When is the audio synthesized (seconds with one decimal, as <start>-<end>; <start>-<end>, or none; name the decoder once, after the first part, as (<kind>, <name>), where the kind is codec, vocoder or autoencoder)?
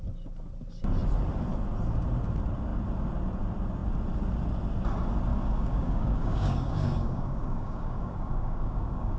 5.3-9.2 (codec, DAC)